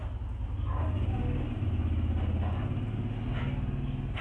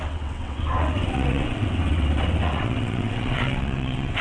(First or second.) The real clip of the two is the first